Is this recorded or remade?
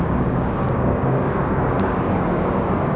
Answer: remade